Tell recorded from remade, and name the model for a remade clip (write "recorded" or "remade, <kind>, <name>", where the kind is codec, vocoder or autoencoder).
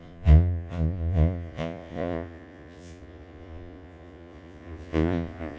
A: remade, vocoder, Vocos